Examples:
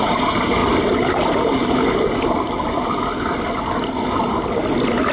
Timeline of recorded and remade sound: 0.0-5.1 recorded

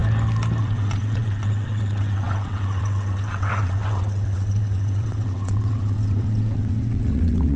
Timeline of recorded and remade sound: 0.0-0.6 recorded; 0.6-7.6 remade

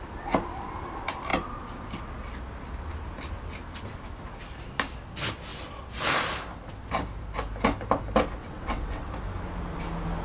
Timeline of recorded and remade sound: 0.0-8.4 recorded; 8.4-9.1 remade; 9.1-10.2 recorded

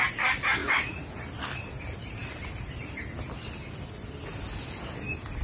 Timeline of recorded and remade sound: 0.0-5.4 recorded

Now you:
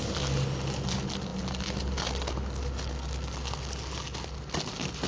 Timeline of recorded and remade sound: 0.0-5.1 recorded

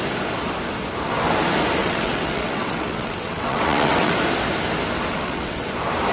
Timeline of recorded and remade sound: 0.0-1.8 recorded; 1.8-4.1 remade; 4.1-5.1 recorded; 5.1-5.6 remade; 5.6-6.1 recorded

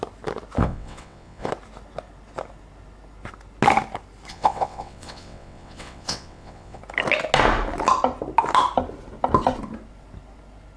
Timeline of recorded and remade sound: 0.0-0.6 recorded; 0.6-1.5 remade; 1.5-4.3 recorded; 4.3-6.8 remade; 6.8-10.8 recorded

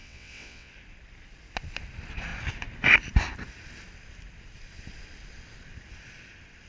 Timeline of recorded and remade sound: 0.0-0.7 remade; 0.7-6.7 recorded